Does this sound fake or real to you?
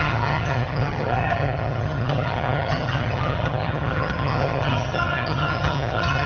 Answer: fake